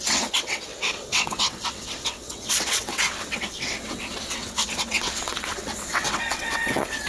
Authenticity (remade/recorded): remade